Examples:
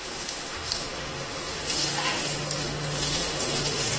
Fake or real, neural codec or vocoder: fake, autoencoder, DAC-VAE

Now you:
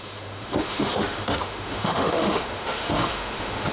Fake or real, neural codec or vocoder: fake, autoencoder, DAC-VAE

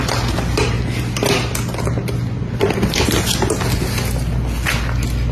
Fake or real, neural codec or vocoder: real